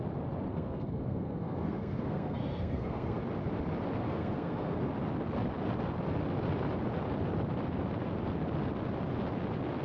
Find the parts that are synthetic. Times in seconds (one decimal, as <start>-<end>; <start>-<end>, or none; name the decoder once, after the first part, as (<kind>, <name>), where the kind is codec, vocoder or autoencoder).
0.5-3.2 (codec, SNAC); 4.0-4.8